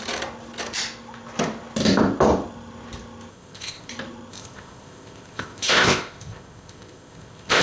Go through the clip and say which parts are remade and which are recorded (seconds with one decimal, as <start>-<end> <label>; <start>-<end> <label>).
0.0-3.3 recorded; 3.3-3.9 remade; 3.9-4.3 recorded; 4.3-7.6 remade